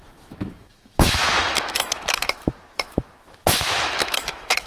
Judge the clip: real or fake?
fake